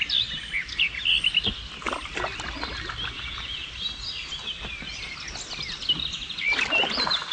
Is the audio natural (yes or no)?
yes